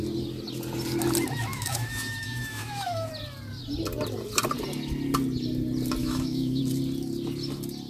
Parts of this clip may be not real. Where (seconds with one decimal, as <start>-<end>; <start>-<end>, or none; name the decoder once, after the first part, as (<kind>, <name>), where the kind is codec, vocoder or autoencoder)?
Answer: 1.5-3.1 (autoencoder, DAC-VAE); 6.0-6.6